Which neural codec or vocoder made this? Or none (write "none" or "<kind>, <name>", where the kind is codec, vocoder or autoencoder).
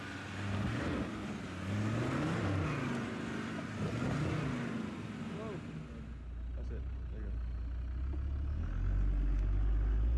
none